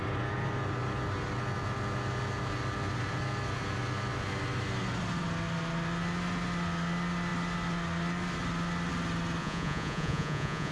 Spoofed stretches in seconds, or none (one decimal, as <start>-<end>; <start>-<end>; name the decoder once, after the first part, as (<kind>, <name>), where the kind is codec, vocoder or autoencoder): 9.4-10.7 (vocoder, Vocos)